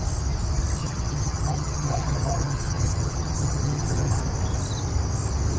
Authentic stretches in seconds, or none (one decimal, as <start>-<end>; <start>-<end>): 0.0-0.8; 4.2-5.6